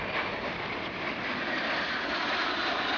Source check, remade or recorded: recorded